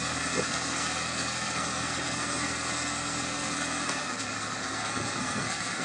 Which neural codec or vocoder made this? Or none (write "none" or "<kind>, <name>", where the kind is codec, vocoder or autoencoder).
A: codec, SNAC